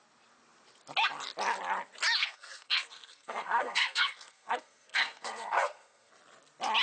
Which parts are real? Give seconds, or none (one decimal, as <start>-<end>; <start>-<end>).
0.0-2.2; 6.1-6.8